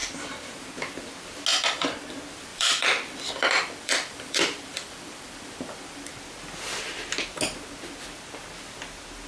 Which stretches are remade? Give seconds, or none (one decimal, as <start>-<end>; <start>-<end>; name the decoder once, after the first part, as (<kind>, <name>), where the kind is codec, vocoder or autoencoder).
1.5-2.1 (vocoder, BigVGAN v2); 2.5-6.2